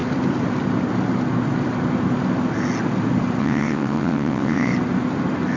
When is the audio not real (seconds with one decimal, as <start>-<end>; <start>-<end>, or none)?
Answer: 3.4-4.7